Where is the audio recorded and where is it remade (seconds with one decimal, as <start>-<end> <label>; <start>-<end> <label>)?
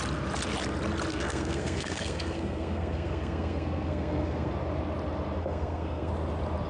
0.0-1.1 recorded; 1.1-4.5 remade; 4.5-5.4 recorded; 5.4-6.1 remade; 6.1-6.7 recorded